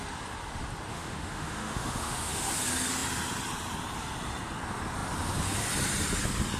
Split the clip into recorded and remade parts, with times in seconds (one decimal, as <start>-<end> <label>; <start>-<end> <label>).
0.0-0.9 recorded; 0.9-2.5 remade; 2.5-6.6 recorded